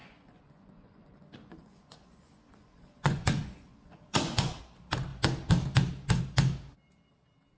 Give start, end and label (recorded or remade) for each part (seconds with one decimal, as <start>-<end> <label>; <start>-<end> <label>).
0.0-4.6 remade; 4.6-7.6 recorded

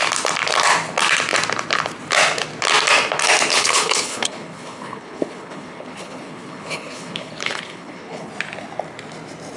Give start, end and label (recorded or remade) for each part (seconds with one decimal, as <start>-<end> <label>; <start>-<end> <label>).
0.0-3.5 recorded; 3.5-8.3 remade; 8.3-9.6 recorded

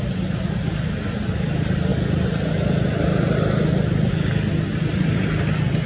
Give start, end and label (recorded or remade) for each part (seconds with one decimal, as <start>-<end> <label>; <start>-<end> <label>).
0.0-5.9 recorded

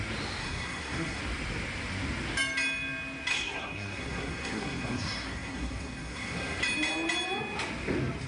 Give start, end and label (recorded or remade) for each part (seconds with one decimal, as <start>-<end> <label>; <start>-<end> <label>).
0.0-0.4 recorded; 0.4-1.2 remade; 1.2-3.3 recorded; 3.3-6.6 remade; 6.6-8.3 recorded

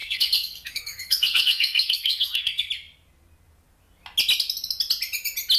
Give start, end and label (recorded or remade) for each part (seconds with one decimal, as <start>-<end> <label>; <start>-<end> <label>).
0.0-2.7 remade; 2.7-5.6 recorded

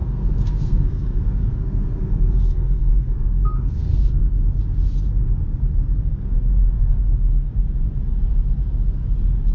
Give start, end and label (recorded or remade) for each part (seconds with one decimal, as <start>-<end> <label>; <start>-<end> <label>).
0.0-4.6 remade; 4.6-6.1 recorded; 6.1-7.5 remade; 7.5-9.5 recorded